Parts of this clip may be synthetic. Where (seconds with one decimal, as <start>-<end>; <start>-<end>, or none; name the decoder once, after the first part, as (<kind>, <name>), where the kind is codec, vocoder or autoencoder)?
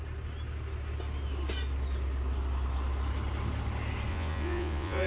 4.1-5.1 (vocoder, Vocos)